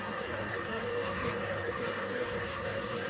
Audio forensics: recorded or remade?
remade